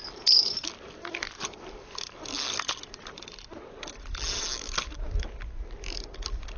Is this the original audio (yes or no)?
yes